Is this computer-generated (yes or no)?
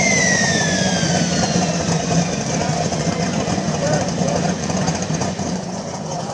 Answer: yes